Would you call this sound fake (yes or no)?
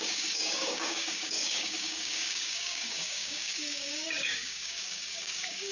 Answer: yes